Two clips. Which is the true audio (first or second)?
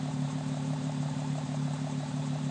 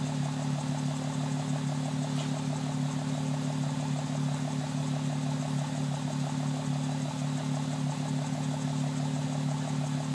second